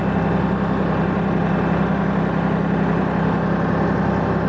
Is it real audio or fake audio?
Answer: real